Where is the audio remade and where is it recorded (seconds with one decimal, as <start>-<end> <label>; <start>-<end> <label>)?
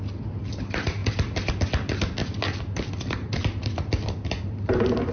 0.0-5.1 recorded